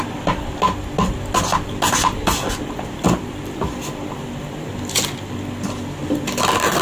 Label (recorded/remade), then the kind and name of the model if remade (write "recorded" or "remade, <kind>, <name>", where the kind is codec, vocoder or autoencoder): recorded